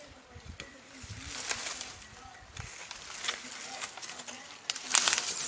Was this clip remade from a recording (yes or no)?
no